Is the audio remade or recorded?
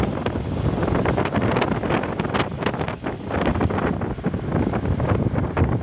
recorded